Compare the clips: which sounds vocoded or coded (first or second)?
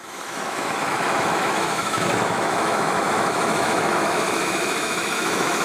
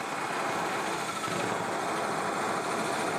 first